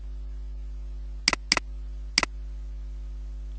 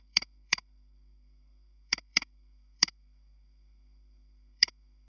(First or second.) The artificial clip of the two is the second